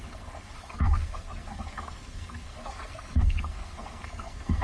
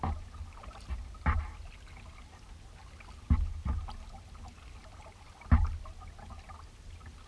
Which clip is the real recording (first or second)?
second